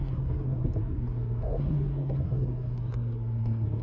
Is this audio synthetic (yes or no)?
yes